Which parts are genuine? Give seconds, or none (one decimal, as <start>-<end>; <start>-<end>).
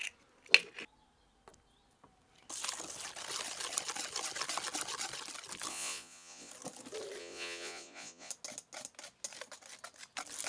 0.0-5.7; 6.5-7.2; 8.3-10.5